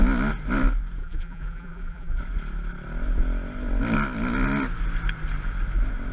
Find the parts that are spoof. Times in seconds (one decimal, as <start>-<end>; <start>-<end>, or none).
1.0-2.2